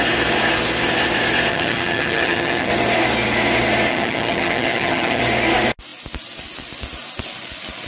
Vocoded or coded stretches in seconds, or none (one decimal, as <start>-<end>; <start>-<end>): 1.5-2.7; 3.9-5.2